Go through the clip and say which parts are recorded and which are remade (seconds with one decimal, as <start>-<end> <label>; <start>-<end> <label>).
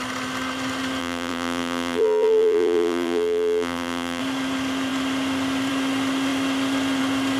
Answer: 0.0-1.0 recorded; 1.0-4.2 remade; 4.2-7.4 recorded